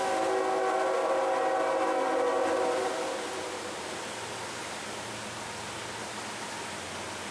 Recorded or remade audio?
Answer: recorded